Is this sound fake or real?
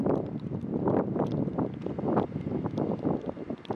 real